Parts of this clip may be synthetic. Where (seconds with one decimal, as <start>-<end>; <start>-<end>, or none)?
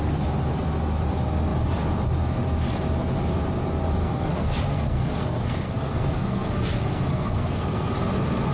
4.0-7.9